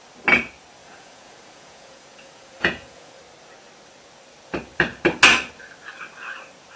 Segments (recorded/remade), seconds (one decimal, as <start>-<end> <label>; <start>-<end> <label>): 0.0-0.8 recorded; 0.8-3.2 remade; 3.2-6.8 recorded